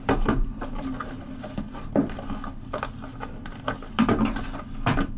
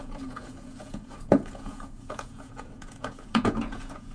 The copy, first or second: second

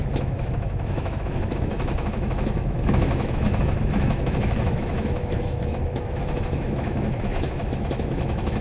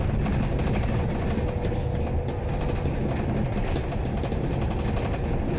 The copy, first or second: first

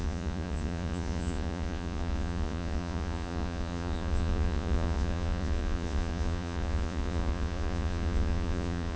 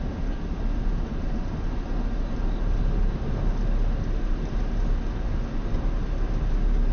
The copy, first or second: first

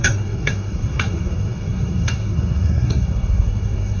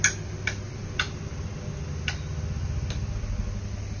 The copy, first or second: first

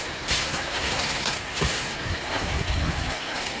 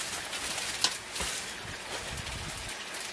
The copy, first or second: first